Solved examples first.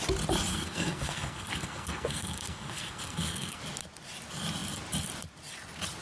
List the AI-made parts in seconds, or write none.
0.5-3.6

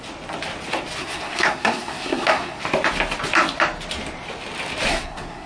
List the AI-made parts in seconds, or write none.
1.0-2.6; 4.9-5.5